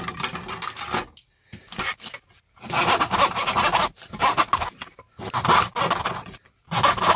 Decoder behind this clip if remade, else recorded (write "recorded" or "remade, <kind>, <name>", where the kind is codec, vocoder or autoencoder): recorded